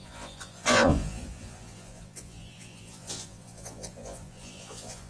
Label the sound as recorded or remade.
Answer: remade